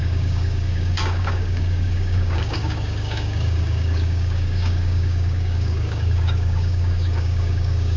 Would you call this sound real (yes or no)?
no